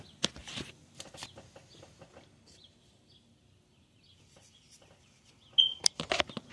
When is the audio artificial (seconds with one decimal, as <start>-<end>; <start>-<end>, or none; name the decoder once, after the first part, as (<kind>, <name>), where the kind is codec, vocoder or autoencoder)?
0.4-1.0 (vocoder, BigVGAN v2)